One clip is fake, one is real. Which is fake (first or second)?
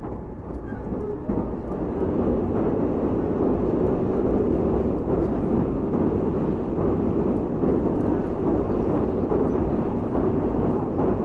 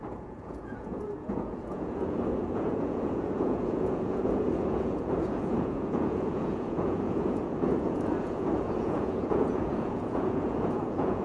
second